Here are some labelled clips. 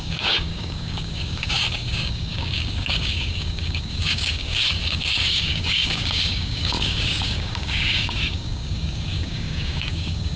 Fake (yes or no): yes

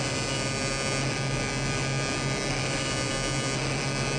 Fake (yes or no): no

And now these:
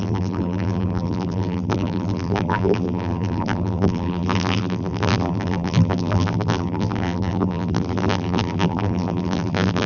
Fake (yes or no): yes